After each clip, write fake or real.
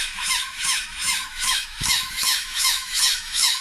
fake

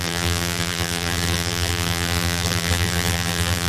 fake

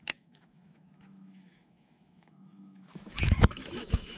fake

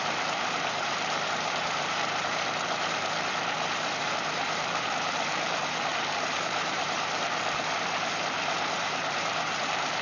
fake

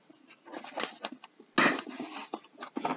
real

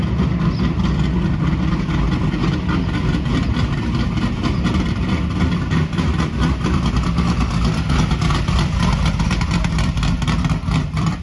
real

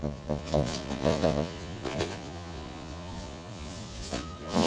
fake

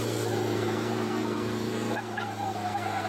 fake